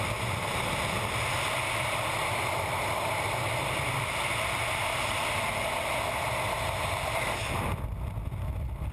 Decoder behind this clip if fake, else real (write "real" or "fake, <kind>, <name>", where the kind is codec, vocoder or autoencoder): real